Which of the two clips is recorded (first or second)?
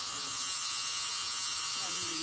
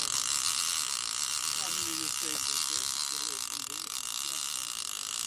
second